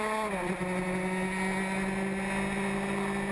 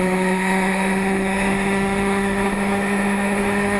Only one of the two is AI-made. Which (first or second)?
second